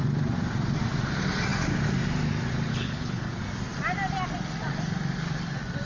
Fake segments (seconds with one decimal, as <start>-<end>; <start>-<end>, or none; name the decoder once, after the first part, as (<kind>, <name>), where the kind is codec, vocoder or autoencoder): 2.7-3.3 (codec, HILCodec)